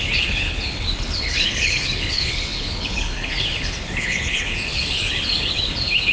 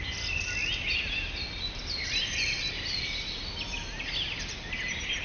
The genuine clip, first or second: second